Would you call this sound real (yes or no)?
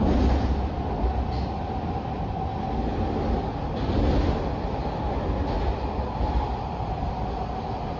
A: yes